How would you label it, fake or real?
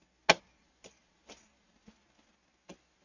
real